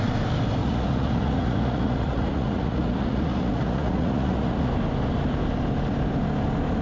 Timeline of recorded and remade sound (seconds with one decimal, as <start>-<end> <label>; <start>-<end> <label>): 0.0-0.6 recorded; 0.6-4.7 remade; 4.7-6.8 recorded